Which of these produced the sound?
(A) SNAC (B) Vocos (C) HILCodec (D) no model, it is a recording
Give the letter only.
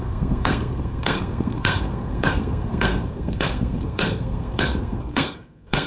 A